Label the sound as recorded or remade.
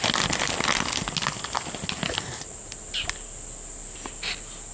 recorded